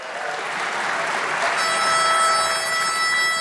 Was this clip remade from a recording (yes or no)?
no